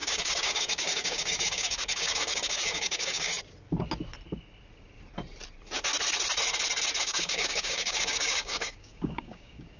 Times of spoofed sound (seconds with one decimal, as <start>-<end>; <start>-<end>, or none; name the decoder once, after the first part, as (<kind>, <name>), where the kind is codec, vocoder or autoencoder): 0.0-3.3 (codec, DAC); 7.0-9.8